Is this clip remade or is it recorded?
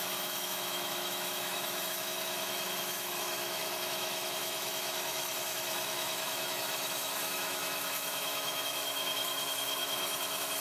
remade